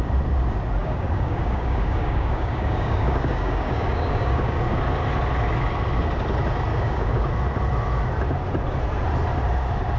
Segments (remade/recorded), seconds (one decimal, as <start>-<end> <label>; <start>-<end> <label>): 0.0-0.8 recorded; 0.8-4.7 remade; 4.7-6.7 recorded; 6.7-7.3 remade; 7.3-10.0 recorded